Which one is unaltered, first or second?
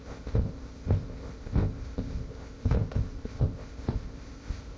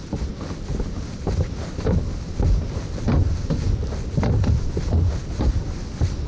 second